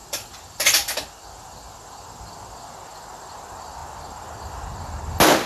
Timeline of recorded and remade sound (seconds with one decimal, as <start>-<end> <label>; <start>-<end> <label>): 0.0-5.5 recorded

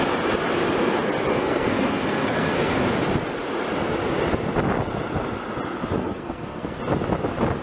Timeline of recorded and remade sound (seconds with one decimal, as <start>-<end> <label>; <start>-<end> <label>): 0.0-1.3 recorded; 1.3-2.7 remade; 2.7-6.0 recorded; 6.0-6.8 remade; 6.8-7.6 recorded

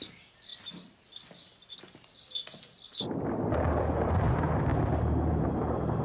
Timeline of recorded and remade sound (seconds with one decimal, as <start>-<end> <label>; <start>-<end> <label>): 0.0-6.0 recorded

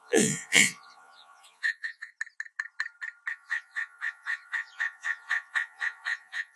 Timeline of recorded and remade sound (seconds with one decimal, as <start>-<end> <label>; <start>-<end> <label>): 0.0-2.1 remade; 2.1-3.3 recorded; 3.3-6.6 remade

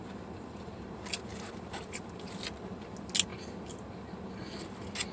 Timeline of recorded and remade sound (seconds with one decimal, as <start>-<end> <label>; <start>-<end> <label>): 0.0-5.1 recorded

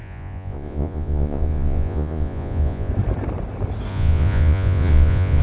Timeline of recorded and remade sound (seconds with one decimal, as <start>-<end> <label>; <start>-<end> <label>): 0.0-2.9 remade; 2.9-3.9 recorded; 3.9-5.4 remade

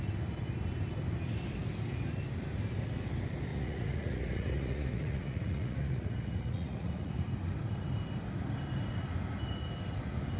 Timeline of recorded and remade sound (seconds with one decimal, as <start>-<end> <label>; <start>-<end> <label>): 0.0-3.5 recorded; 3.5-7.2 remade; 7.2-10.4 recorded

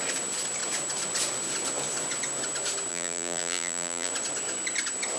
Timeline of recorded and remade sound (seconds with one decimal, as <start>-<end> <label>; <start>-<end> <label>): 0.0-2.9 recorded; 2.9-4.1 remade; 4.1-5.2 recorded